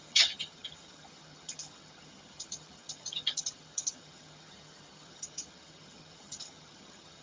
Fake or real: fake